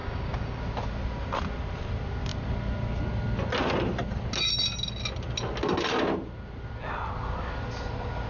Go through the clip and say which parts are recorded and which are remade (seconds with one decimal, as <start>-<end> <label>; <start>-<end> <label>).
0.0-0.6 remade; 0.6-8.3 recorded

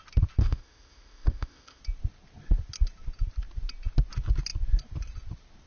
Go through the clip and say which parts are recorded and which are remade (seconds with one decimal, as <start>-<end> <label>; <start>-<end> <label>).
0.0-0.4 recorded; 0.4-1.8 remade; 1.8-5.7 recorded

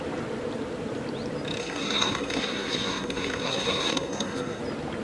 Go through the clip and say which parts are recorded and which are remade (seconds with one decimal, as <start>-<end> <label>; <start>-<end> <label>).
0.0-1.6 recorded; 1.6-4.6 remade; 4.6-5.0 recorded

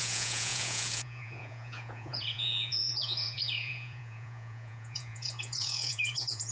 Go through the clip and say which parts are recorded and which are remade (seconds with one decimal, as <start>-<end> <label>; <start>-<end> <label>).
0.0-6.5 remade

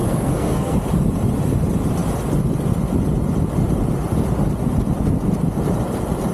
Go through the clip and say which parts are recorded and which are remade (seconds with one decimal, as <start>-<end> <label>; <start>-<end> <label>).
0.0-0.8 remade; 0.8-6.3 recorded

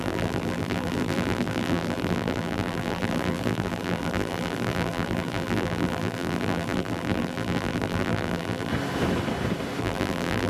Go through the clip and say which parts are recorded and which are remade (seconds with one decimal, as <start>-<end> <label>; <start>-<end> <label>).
0.0-8.7 remade; 8.7-9.8 recorded; 9.8-10.5 remade

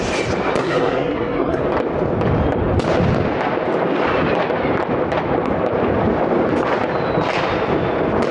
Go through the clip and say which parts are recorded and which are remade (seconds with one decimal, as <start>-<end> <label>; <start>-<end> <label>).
0.0-0.6 recorded; 0.6-1.6 remade; 1.6-8.3 recorded